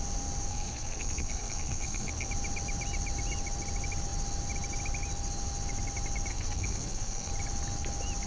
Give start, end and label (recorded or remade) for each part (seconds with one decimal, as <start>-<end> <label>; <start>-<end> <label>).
0.0-0.5 recorded; 0.5-2.3 remade; 2.3-6.3 recorded; 6.3-7.3 remade; 7.3-8.3 recorded